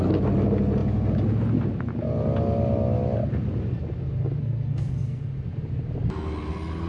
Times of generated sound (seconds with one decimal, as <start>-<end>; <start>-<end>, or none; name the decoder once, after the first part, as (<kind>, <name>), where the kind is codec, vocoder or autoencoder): 4.4-5.2 (codec, SNAC)